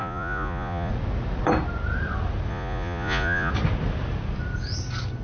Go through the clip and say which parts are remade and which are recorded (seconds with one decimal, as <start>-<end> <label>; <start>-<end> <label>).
0.0-0.9 remade; 0.9-2.5 recorded; 2.5-3.5 remade; 3.5-5.2 recorded